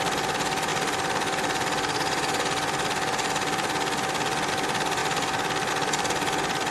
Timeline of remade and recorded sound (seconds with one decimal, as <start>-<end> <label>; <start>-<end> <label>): 0.0-6.7 recorded